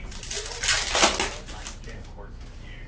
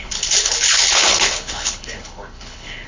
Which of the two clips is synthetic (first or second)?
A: second